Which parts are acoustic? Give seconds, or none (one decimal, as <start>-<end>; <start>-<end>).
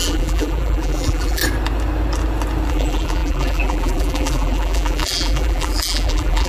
1.4-2.7